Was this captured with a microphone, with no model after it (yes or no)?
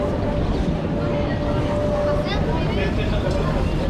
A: yes